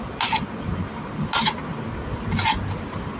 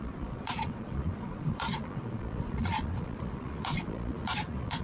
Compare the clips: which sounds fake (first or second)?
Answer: second